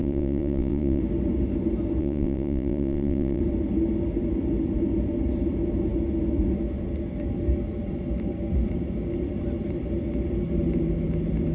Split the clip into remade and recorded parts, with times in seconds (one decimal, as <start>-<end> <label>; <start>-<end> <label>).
0.0-1.0 remade; 1.0-2.0 recorded; 2.0-3.4 remade; 3.4-11.5 recorded